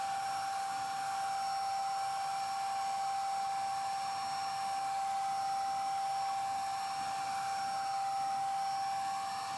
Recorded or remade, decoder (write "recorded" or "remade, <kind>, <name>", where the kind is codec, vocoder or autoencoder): recorded